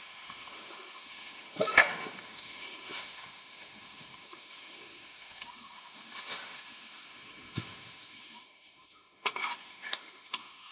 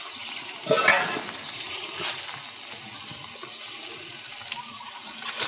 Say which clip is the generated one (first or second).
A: first